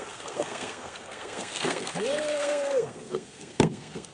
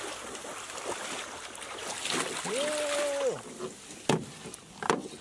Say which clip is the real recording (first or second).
second